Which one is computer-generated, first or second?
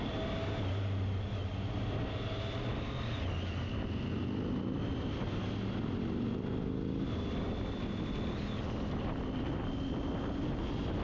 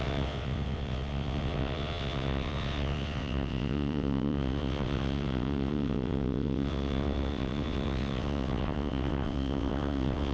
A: second